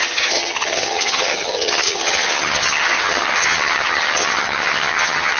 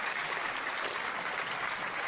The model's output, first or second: first